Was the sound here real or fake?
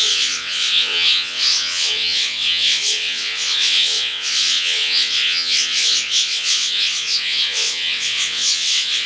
fake